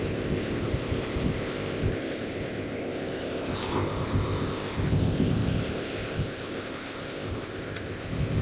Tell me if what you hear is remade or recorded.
remade